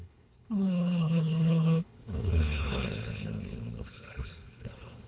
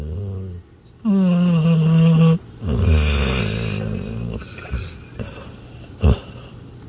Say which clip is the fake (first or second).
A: first